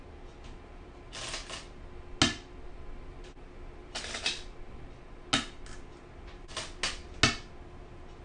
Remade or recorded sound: recorded